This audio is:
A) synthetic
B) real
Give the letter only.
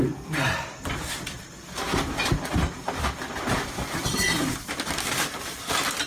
B